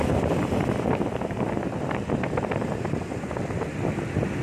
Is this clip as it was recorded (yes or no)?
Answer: no